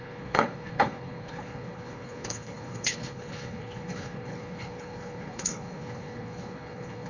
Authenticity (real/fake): fake